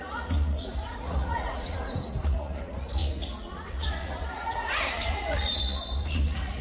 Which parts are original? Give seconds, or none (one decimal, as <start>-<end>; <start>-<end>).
none